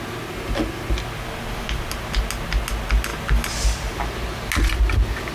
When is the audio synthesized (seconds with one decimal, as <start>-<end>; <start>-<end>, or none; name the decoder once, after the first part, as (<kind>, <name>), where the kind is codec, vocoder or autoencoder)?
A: none